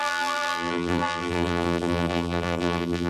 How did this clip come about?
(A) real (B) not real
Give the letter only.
B